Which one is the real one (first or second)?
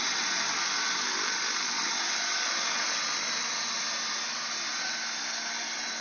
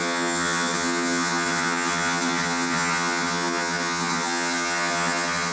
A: first